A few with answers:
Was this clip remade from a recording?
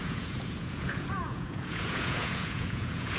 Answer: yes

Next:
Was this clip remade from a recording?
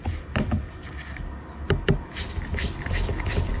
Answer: no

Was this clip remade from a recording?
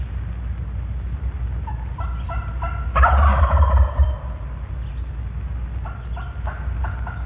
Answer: no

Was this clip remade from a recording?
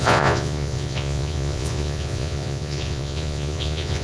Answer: yes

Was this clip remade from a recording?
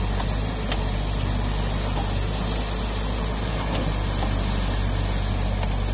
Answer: no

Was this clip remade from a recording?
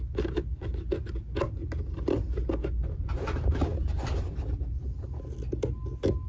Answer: no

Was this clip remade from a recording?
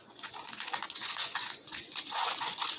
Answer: yes